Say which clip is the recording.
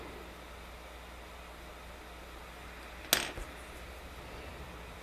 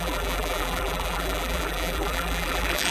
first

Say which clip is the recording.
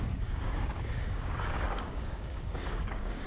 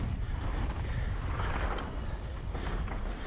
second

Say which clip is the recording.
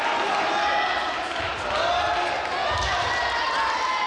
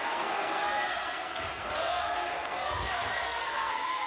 first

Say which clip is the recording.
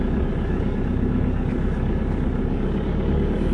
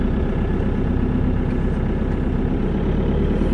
second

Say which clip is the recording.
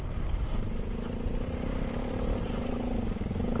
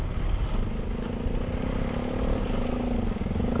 second